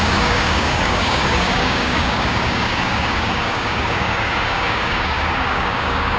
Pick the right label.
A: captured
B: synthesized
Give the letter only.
B